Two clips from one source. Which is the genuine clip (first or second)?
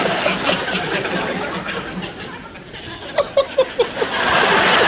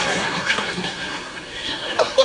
first